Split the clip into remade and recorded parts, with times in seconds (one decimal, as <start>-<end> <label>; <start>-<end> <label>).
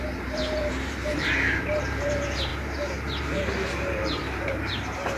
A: 0.0-2.5 remade; 2.5-3.2 recorded; 3.2-5.2 remade